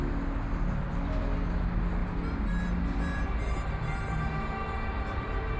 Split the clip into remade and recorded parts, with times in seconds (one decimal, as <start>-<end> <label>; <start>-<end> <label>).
0.0-5.6 recorded